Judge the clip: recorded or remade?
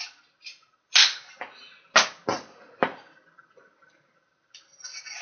recorded